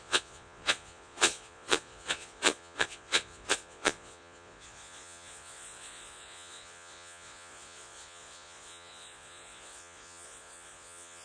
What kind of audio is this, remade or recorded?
remade